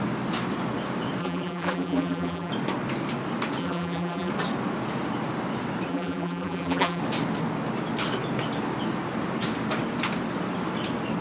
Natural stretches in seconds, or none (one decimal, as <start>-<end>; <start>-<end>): 0.0-1.2; 2.5-3.6; 4.3-5.9; 7.0-11.2